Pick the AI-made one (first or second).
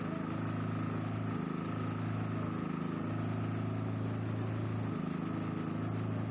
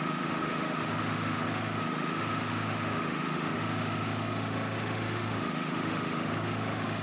second